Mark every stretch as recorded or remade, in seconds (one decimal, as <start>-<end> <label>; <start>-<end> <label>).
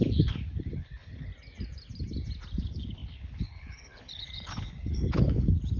0.0-1.3 remade; 1.3-2.6 recorded; 2.6-5.8 remade